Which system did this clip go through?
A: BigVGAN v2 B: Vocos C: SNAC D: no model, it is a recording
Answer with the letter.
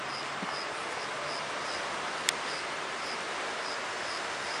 D